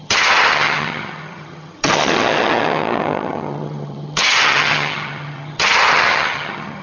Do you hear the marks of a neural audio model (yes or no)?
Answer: yes